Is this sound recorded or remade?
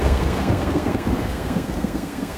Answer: remade